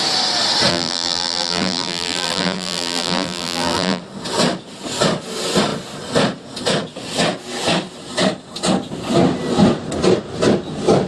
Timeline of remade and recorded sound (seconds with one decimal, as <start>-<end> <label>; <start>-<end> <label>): 0.0-0.7 recorded; 0.7-4.0 remade; 4.0-11.1 recorded